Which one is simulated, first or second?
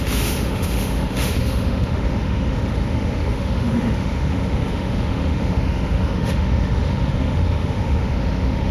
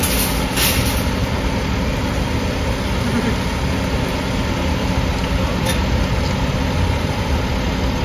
first